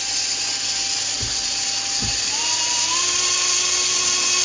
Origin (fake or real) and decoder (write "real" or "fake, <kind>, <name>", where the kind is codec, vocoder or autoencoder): real